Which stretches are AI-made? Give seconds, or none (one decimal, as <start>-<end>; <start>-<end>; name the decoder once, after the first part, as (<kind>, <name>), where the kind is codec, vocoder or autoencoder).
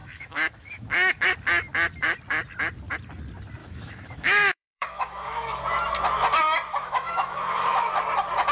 0.0-1.3 (autoencoder, DAC-VAE); 3.6-5.6; 6.7-7.9